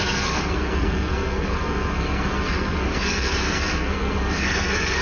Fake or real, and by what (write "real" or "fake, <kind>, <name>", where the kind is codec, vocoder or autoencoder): fake, codec, SNAC